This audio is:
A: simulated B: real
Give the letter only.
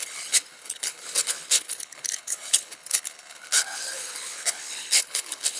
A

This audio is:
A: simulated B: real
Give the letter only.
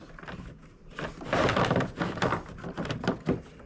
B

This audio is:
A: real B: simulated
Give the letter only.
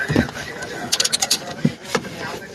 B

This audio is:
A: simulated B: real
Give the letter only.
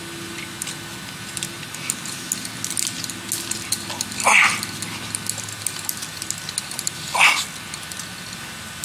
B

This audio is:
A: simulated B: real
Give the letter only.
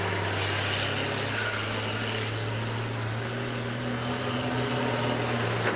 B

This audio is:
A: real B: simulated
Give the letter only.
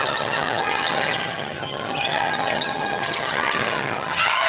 B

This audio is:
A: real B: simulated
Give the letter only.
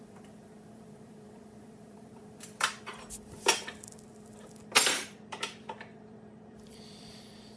B